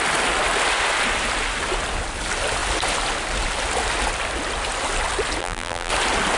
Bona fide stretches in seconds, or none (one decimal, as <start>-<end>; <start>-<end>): 0.0-5.4; 5.9-6.4